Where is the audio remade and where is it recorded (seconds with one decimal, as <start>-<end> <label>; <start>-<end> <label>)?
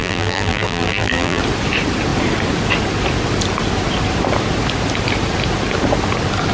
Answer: 0.0-1.4 remade; 1.4-6.5 recorded